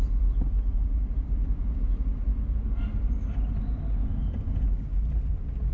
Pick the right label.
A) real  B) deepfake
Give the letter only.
A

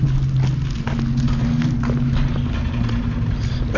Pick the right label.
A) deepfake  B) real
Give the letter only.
B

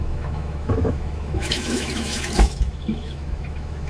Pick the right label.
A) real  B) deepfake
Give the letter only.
B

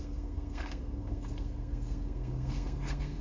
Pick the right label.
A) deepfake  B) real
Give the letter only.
A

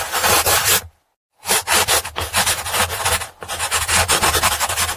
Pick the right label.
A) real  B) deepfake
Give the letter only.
A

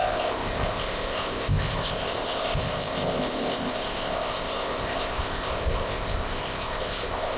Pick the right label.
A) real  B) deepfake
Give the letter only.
B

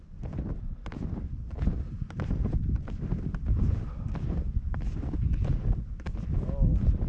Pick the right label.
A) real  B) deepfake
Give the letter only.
A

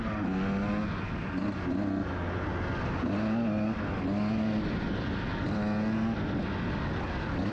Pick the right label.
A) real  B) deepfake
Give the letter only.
A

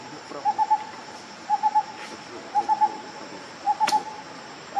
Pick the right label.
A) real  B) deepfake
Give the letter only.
A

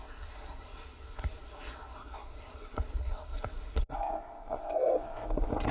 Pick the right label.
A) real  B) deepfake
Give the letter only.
B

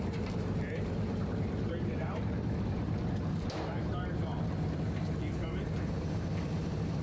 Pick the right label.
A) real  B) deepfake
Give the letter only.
B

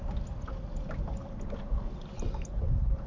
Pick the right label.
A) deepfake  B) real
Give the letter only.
B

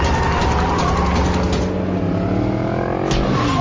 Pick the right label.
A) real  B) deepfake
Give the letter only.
A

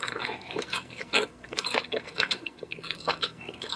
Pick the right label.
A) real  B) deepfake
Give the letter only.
B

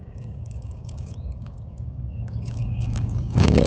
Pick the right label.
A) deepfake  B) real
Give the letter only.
A